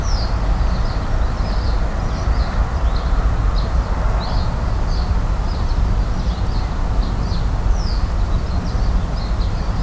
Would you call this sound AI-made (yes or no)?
no